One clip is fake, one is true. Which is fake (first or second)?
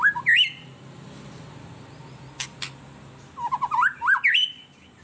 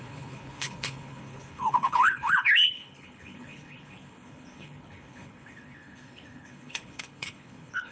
second